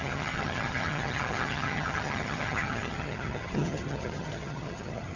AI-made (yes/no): yes